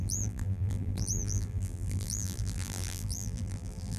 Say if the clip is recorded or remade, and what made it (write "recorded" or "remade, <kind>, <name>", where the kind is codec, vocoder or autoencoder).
remade, vocoder, BigVGAN v2